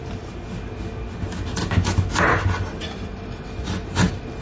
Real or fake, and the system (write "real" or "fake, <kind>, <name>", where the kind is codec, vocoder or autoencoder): real